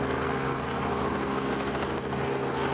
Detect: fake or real fake